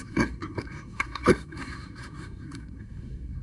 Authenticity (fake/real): fake